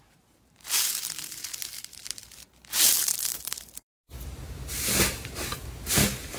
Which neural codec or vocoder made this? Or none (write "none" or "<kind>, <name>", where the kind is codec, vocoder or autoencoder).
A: vocoder, BigVGAN v2